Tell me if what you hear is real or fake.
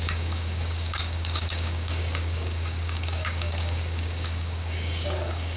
fake